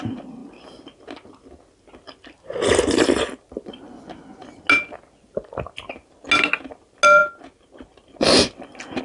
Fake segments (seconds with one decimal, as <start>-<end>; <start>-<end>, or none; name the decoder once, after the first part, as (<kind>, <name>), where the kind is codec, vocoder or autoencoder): none